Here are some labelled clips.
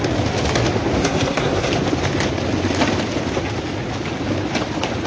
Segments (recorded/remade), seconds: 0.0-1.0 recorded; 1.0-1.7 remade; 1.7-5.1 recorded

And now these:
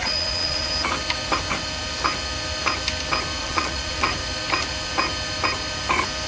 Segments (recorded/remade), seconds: 0.0-0.7 remade; 0.7-3.4 recorded; 3.4-4.2 remade; 4.2-6.3 recorded

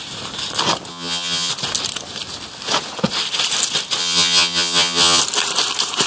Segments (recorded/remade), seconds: 0.0-0.9 recorded; 0.9-1.5 remade; 1.5-4.0 recorded; 4.0-5.2 remade; 5.2-6.1 recorded

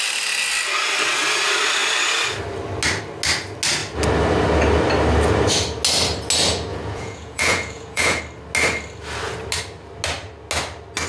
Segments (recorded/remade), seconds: 0.0-6.7 recorded; 6.7-8.2 remade; 8.2-11.1 recorded

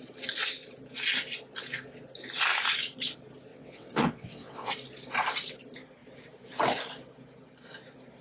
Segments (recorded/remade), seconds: 0.0-3.5 recorded; 3.5-4.7 remade; 4.7-8.2 recorded

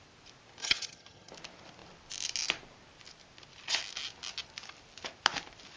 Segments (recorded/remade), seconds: 0.0-0.6 recorded; 0.6-1.3 remade; 1.3-5.8 recorded